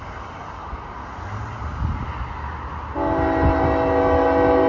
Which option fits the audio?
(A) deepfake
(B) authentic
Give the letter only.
B